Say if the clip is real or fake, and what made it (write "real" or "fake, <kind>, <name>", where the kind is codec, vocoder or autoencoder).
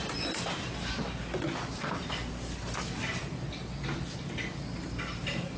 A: real